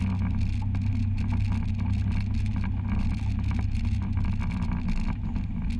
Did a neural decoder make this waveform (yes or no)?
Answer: no